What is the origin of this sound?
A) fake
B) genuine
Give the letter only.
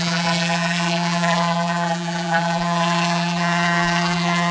A